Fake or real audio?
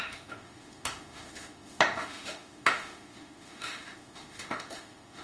fake